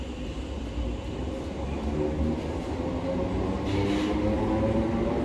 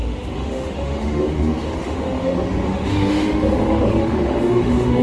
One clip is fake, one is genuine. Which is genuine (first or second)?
first